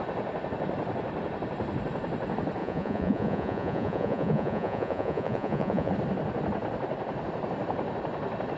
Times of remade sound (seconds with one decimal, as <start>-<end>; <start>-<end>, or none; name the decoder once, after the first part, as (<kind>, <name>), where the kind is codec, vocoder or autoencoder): 2.6-5.9 (vocoder, Vocos)